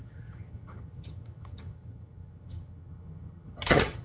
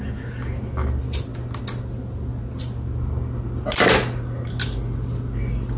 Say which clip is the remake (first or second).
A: first